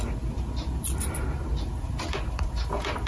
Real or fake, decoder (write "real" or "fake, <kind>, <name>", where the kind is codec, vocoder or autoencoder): real